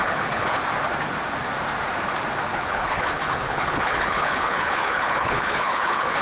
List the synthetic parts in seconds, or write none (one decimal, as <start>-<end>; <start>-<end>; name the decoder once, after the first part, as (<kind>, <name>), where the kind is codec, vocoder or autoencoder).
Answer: 0.0-0.6 (codec, HILCodec); 2.5-6.2